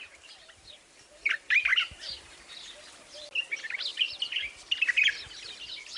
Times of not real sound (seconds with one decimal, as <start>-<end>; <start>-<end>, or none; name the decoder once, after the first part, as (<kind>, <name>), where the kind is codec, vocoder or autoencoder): none